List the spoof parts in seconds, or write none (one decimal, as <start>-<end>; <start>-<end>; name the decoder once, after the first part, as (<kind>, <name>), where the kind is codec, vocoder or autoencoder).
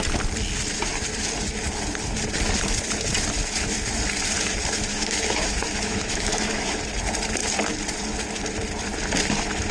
4.9-6.8 (autoencoder, DAC-VAE)